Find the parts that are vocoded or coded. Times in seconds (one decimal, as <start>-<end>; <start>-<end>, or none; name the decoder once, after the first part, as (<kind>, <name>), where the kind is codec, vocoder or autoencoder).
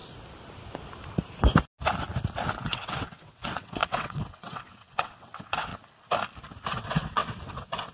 2.6-5.7 (vocoder, WaveNeXt); 6.7-7.9